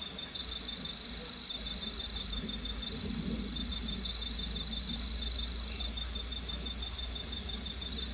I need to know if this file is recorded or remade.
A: recorded